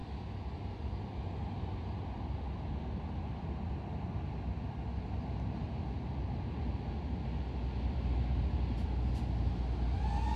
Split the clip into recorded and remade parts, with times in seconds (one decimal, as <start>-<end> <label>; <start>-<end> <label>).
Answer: 0.0-10.4 recorded